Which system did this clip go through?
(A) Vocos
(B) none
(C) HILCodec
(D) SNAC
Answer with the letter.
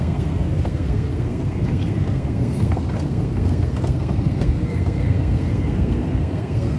D